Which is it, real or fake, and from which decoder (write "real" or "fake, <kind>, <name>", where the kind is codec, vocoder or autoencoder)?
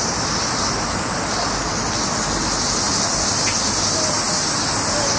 real